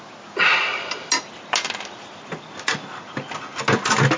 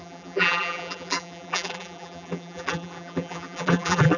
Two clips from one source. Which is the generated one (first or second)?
second